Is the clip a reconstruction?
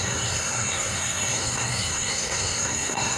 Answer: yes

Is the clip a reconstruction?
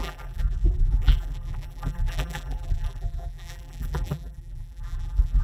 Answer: yes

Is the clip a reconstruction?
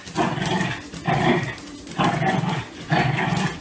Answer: no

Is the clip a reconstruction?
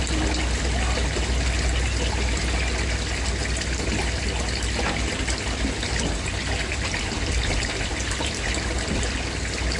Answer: no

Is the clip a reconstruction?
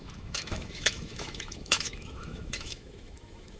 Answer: yes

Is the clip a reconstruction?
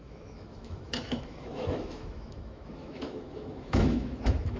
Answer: yes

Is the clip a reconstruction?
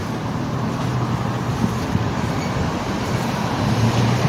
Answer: yes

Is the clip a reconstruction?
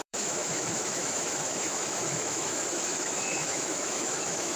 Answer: yes